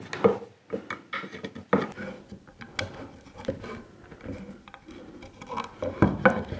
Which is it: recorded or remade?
recorded